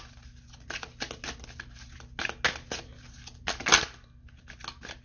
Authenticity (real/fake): real